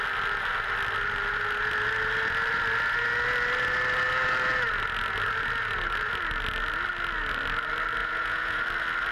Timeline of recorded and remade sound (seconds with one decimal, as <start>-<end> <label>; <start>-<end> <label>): 0.0-8.0 recorded; 8.0-8.6 remade; 8.6-9.1 recorded